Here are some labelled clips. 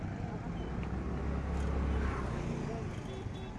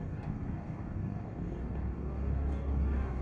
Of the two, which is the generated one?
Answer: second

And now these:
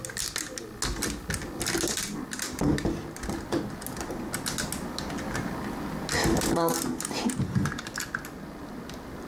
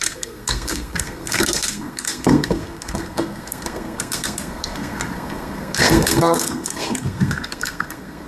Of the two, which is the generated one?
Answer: second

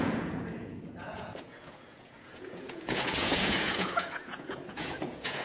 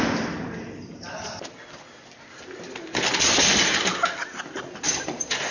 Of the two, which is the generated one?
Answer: first